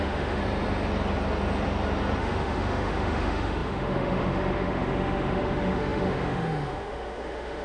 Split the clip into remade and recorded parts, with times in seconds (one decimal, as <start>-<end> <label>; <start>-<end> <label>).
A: 0.0-0.4 remade; 0.4-2.2 recorded; 2.2-7.6 remade